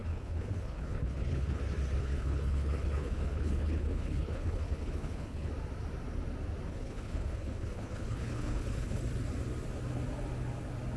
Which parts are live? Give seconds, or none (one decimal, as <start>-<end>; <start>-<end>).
1.6-2.0; 5.5-6.7; 9.0-11.0